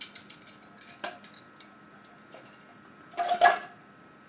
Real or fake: real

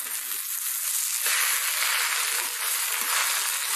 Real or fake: real